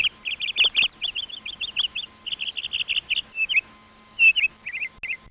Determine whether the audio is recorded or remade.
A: recorded